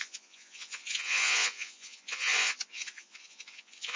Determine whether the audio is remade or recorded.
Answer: remade